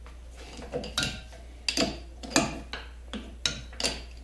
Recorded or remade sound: recorded